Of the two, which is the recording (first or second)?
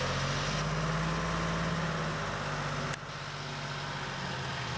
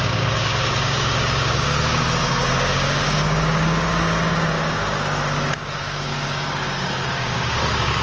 first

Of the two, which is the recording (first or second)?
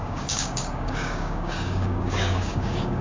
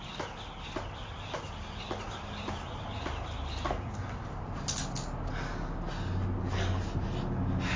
second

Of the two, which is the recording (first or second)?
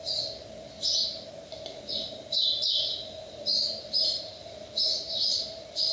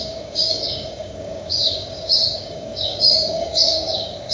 first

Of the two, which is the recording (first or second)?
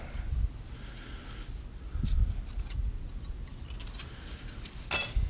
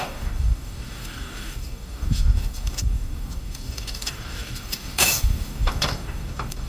first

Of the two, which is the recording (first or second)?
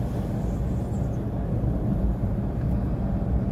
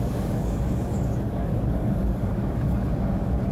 first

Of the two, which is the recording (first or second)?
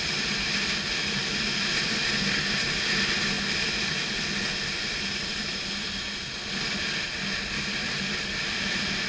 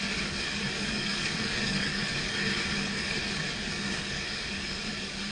first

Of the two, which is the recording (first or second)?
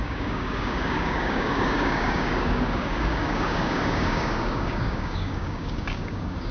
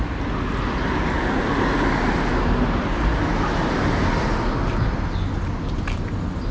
second